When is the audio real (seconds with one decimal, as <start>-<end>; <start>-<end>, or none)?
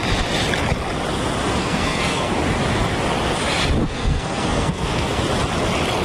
0.0-1.6; 2.3-3.8; 5.2-6.0